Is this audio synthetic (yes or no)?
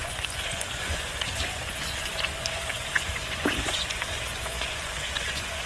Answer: yes